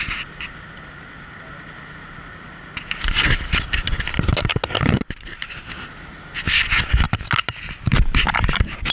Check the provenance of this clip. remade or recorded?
recorded